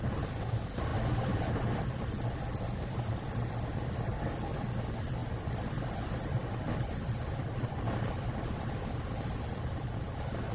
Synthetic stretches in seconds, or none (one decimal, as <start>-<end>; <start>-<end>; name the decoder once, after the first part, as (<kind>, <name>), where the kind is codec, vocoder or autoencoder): 0.9-4.3 (vocoder, BigVGAN v2); 5.2-10.5